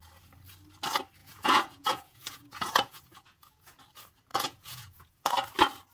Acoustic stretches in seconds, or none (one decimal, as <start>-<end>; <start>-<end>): 0.0-1.2; 3.8-4.3; 5.3-5.9